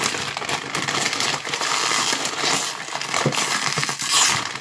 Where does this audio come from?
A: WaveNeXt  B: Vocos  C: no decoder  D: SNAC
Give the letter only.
C